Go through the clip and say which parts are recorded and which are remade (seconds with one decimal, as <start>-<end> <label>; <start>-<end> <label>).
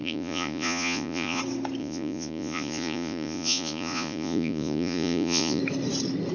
0.0-1.4 remade; 1.4-1.8 recorded; 1.8-5.6 remade; 5.6-6.3 recorded